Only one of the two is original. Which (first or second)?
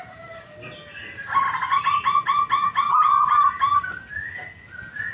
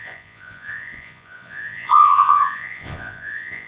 first